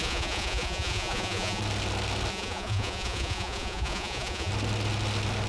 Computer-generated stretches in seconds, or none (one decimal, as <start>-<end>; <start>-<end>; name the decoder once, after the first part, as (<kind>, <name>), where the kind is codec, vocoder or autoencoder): 0.0-1.6 (vocoder, Vocos); 2.3-4.5